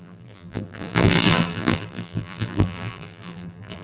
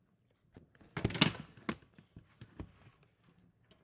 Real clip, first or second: second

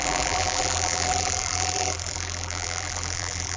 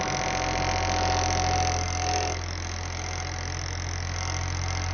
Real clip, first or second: second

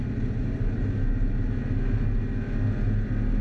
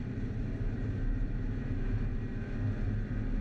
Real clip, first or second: first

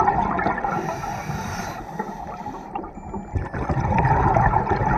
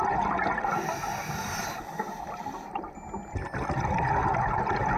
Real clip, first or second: second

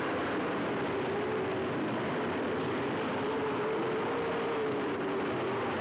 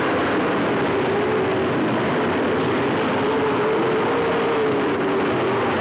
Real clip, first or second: second